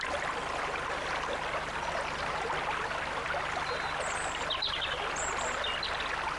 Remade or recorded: recorded